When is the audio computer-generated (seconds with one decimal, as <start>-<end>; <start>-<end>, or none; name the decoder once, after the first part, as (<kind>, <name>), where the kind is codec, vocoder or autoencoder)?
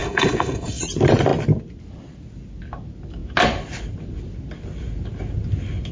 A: 0.0-0.8 (codec, SNAC)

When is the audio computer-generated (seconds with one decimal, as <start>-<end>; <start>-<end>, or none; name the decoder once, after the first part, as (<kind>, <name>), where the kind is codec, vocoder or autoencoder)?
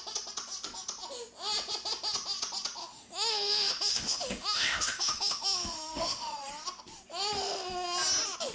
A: 2.8-6.5 (autoencoder, DAC-VAE)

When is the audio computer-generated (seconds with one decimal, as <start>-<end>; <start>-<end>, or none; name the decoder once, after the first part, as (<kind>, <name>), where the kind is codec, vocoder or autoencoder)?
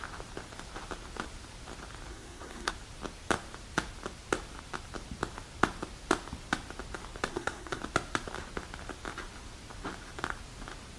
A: 2.1-2.7 (codec, SNAC); 7.3-7.8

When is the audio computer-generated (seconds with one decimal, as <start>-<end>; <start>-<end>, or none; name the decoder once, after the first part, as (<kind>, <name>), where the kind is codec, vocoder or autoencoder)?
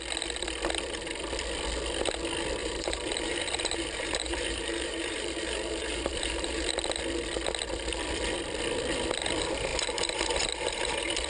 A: 2.6-6.7 (vocoder, BigVGAN v2)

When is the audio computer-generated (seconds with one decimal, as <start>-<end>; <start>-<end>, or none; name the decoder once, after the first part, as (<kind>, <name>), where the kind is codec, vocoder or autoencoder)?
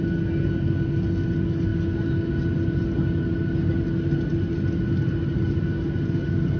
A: none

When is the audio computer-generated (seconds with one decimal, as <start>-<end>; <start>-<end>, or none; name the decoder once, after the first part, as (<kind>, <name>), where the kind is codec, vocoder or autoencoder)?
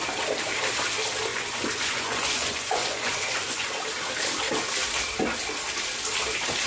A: 1.3-3.7 (vocoder, Vocos)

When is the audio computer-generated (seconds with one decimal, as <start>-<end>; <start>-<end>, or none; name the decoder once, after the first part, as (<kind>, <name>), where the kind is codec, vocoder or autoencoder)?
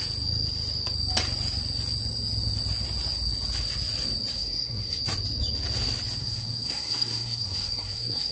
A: 4.3-5.0 (codec, SNAC); 6.2-8.3